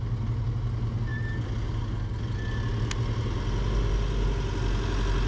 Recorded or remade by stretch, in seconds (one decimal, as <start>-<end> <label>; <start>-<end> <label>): 0.0-5.3 recorded